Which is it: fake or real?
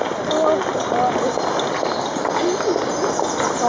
real